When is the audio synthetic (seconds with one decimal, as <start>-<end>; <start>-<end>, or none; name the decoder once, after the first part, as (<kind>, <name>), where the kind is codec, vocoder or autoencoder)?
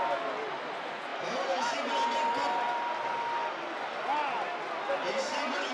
1.1-1.9 (vocoder, BigVGAN v2); 2.4-4.5